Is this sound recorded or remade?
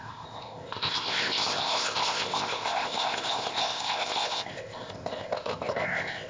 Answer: remade